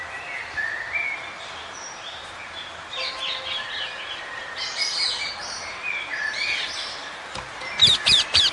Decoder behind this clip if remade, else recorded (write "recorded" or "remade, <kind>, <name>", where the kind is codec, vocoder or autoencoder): remade, vocoder, BigVGAN v2